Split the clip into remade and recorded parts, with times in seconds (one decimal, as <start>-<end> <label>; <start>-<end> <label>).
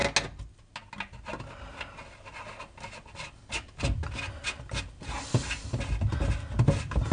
0.0-7.1 recorded